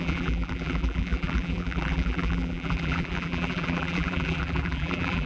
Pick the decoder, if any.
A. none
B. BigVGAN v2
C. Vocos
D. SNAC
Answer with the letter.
B